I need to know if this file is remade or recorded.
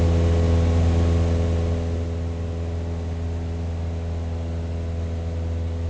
recorded